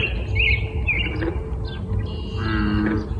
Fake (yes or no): no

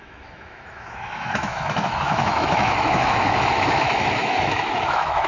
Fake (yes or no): yes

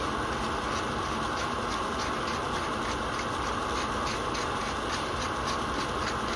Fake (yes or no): no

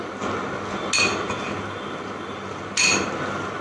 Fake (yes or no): no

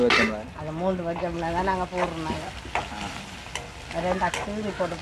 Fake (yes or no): no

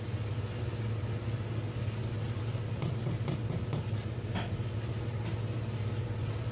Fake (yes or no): no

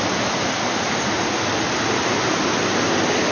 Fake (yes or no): no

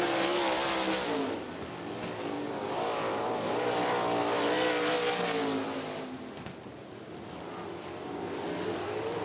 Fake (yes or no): no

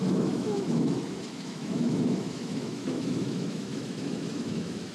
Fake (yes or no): yes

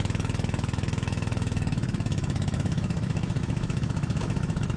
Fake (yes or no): yes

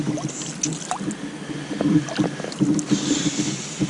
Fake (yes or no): no